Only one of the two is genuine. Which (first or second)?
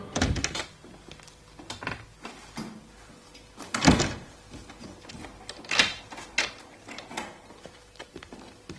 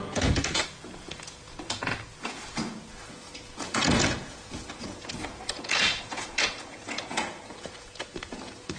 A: first